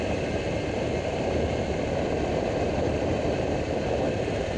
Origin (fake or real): fake